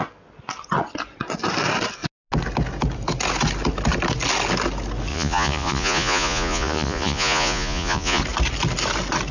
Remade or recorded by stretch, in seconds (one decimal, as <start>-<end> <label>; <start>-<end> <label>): 0.0-5.1 recorded; 5.1-8.2 remade; 8.2-9.3 recorded